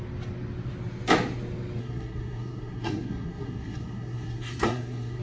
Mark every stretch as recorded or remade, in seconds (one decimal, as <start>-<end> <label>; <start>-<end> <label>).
0.0-1.8 recorded; 1.8-5.2 remade